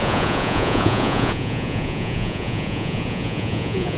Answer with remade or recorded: remade